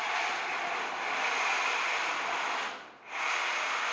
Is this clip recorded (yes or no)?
yes